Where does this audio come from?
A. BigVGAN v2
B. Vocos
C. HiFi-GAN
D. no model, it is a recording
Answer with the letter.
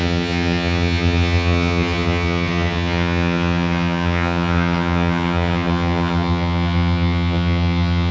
C